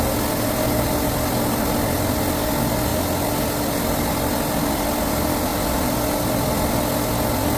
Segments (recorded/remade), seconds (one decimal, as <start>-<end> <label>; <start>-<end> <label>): 0.0-7.6 recorded